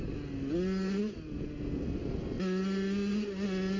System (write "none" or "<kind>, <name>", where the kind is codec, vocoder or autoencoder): none